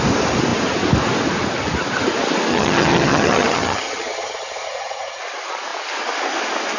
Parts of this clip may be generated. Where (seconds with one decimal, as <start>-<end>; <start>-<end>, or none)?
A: 2.5-5.2